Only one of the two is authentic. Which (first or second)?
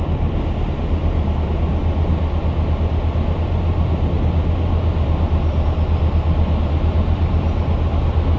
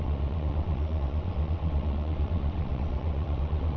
first